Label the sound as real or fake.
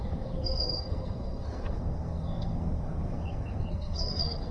fake